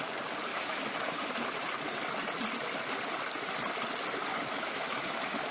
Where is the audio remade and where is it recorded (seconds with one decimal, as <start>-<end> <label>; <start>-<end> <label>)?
0.0-0.5 recorded; 0.5-1.3 remade; 1.3-4.3 recorded; 4.3-5.5 remade

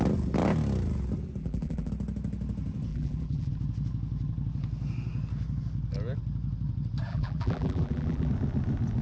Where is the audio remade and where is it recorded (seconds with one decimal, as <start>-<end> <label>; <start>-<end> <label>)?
0.0-1.4 recorded; 1.4-1.9 remade; 1.9-2.9 recorded; 2.9-3.5 remade; 3.5-7.1 recorded; 7.1-8.3 remade; 8.3-9.0 recorded

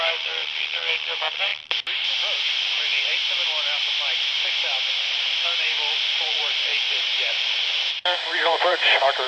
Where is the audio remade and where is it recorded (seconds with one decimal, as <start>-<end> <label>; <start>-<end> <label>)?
0.0-1.5 remade; 1.5-2.4 recorded; 2.4-2.9 remade; 2.9-4.8 recorded; 4.8-9.3 remade

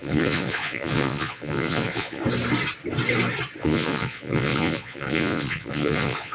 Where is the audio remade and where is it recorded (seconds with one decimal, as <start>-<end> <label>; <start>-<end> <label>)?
0.0-2.2 remade; 2.2-3.6 recorded; 3.6-6.3 remade

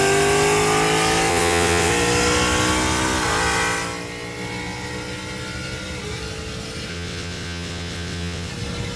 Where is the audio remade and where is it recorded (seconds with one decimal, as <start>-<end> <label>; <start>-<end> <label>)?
0.0-1.3 recorded; 1.3-1.9 remade; 1.9-6.9 recorded; 6.9-8.5 remade; 8.5-9.0 recorded

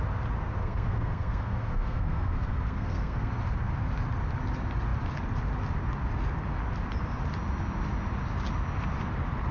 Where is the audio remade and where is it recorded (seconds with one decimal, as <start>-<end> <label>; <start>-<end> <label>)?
0.0-0.6 recorded; 0.6-3.3 remade; 3.3-9.5 recorded

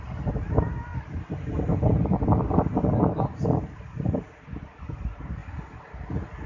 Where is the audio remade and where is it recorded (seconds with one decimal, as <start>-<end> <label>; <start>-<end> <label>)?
0.0-6.5 recorded

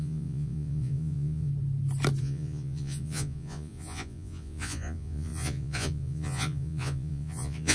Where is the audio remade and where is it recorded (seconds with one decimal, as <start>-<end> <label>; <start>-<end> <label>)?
0.0-1.5 remade; 1.5-2.2 recorded; 2.2-7.7 remade